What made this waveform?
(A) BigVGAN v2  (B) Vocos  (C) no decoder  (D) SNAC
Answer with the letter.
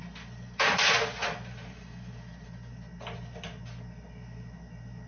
C